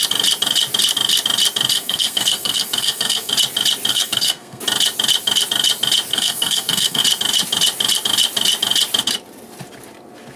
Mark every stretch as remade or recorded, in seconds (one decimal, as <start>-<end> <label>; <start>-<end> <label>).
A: 0.0-1.7 recorded; 1.7-3.3 remade; 3.3-3.9 recorded; 3.9-4.6 remade; 4.6-6.1 recorded; 6.1-7.0 remade; 7.0-10.4 recorded